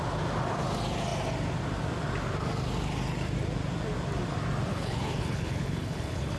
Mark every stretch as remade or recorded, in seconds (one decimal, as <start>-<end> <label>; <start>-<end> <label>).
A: 0.0-4.7 recorded; 4.7-6.4 remade